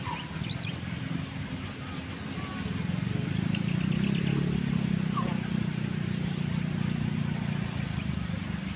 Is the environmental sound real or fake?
real